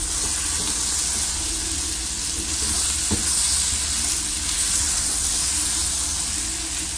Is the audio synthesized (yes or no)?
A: no